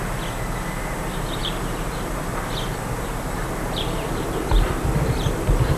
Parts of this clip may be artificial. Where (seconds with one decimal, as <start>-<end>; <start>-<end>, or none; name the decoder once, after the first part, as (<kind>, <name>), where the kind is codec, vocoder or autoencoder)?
2.3-5.8 (vocoder, BigVGAN v2)

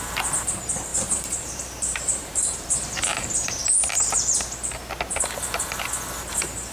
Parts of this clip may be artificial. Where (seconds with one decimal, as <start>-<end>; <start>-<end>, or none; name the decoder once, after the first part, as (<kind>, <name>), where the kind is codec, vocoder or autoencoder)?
0.0-3.6 (vocoder, BigVGAN v2); 6.3-6.7

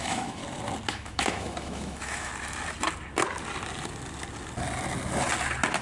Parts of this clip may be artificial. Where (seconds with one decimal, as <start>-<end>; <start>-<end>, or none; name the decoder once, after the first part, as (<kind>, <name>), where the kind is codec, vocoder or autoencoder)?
0.0-0.4 (autoencoder, DAC-VAE); 0.9-2.3

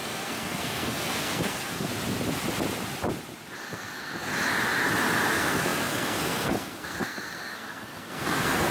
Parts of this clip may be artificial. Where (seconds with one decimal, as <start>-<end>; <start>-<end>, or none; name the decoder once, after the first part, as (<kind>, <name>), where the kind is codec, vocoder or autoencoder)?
0.0-1.9 (codec, SNAC); 3.6-4.3; 5.3-8.7